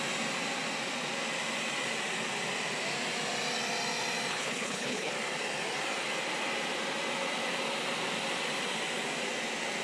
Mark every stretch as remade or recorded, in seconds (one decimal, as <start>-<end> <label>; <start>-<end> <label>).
0.0-4.3 recorded; 4.3-5.1 remade; 5.1-9.8 recorded